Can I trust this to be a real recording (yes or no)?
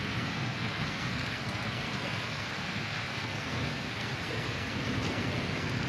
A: no